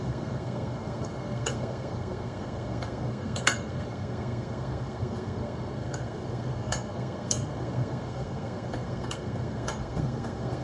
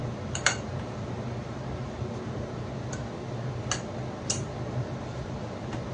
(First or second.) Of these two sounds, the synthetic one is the first